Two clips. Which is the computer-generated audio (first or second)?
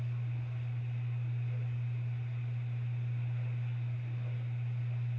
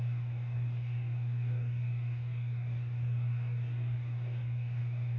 second